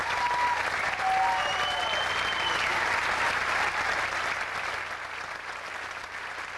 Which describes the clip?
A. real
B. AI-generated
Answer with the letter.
A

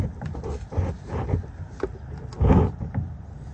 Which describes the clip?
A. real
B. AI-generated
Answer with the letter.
A